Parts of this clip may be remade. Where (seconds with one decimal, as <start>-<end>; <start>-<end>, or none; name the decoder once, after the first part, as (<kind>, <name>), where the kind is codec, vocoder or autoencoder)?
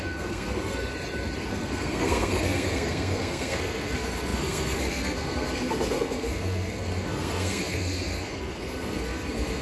0.0-0.9 (codec, SNAC); 1.5-9.6